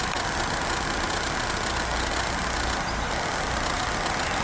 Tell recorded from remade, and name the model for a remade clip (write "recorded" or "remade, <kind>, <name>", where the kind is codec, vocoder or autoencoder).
recorded